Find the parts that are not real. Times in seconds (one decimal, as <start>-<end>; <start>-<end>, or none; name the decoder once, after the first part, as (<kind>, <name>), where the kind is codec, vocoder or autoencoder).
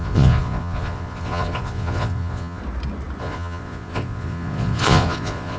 0.0-2.6 (vocoder, Vocos); 3.2-5.6